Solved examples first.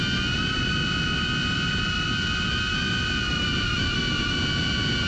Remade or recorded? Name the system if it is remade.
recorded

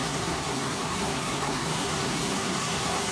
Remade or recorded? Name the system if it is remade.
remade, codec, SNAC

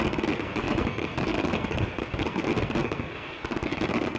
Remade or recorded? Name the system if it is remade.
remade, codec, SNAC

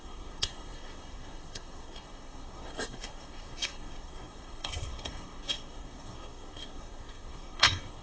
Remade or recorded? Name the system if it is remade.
remade, codec, SNAC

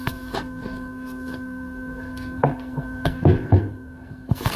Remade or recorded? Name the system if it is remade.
remade, codec, SNAC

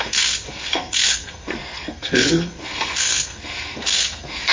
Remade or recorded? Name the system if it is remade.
remade, codec, SNAC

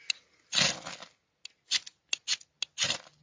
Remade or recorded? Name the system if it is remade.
recorded